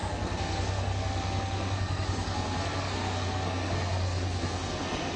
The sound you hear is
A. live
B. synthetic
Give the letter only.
B